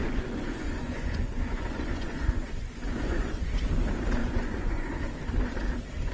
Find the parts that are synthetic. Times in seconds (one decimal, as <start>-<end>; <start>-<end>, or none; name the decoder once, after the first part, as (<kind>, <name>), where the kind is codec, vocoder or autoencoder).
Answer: 0.0-3.7 (vocoder, Vocos); 4.2-5.0